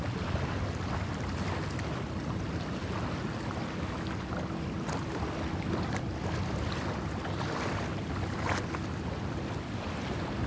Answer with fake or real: real